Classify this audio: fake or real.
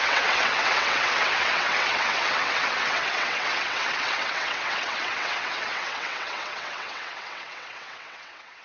fake